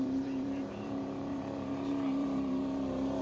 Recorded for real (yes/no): no